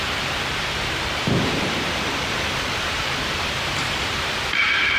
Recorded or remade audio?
remade